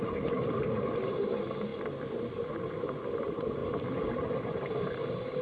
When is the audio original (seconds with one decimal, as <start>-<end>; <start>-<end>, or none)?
0.0-5.4